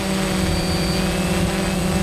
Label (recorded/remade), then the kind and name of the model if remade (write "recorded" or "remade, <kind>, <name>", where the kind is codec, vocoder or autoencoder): recorded